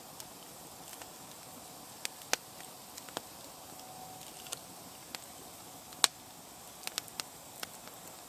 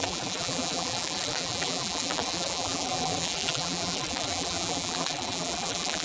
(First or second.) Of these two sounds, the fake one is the second